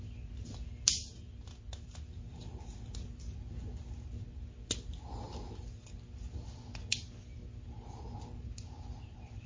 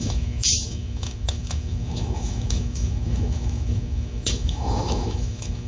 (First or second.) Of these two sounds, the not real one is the second